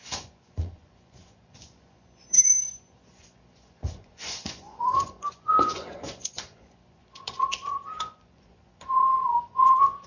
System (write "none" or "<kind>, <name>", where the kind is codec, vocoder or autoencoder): vocoder, Vocos